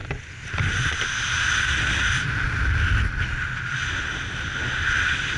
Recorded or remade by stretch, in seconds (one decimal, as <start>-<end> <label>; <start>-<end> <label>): 0.0-5.4 recorded